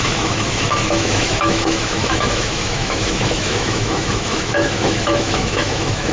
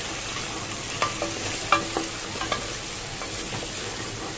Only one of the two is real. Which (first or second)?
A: second